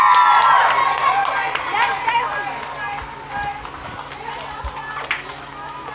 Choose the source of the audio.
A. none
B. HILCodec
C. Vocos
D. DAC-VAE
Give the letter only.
A